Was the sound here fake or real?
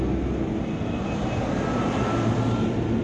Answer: real